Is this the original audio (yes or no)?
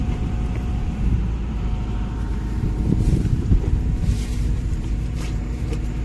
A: no